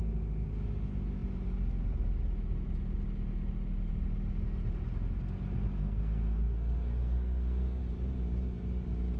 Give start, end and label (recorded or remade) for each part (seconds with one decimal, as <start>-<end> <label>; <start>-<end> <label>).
0.0-5.8 recorded; 5.8-7.8 remade; 7.8-9.2 recorded